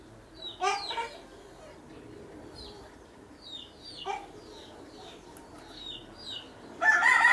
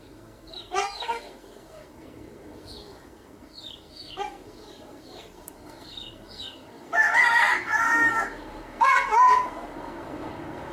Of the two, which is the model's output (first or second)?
second